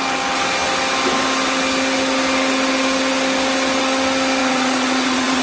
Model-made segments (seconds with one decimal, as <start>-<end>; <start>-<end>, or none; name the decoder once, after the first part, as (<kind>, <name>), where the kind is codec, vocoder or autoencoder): 4.4-5.4 (vocoder, Vocos)